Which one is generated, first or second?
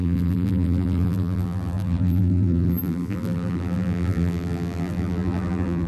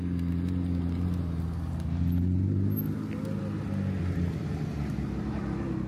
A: first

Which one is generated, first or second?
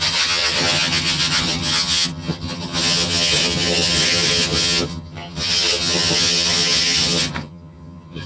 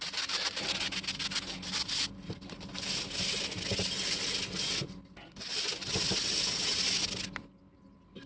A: first